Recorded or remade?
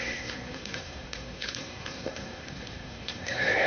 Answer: remade